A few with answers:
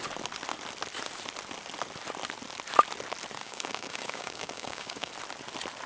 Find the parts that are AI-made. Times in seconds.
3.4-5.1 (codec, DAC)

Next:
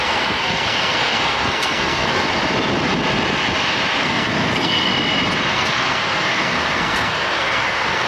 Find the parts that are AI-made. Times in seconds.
0.0-2.3 (codec, SNAC); 4.0-4.9; 5.5-8.1

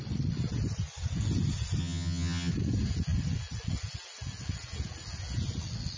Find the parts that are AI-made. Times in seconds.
1.8-2.5 (vocoder, HiFi-GAN)

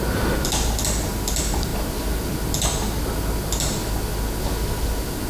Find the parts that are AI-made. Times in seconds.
none

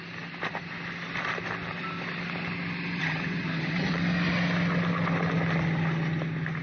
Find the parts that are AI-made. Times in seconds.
3.0-4.0 (vocoder, WaveNeXt)